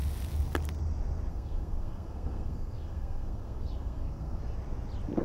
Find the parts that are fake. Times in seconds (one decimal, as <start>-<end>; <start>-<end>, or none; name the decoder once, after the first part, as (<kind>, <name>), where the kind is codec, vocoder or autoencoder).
1.3-4.4 (codec, SNAC)